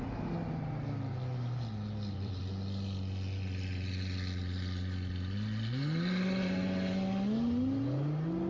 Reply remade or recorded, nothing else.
recorded